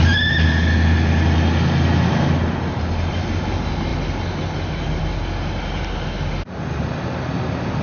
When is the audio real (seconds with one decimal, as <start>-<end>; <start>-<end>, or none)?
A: 0.0-7.8